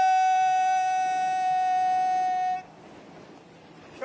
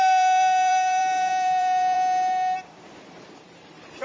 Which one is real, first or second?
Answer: first